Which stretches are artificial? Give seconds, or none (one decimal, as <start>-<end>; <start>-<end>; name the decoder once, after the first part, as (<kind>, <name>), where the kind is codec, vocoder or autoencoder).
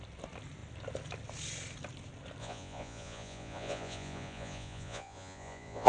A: 2.4-5.9 (vocoder, Vocos)